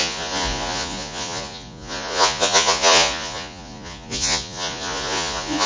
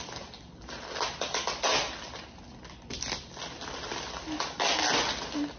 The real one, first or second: second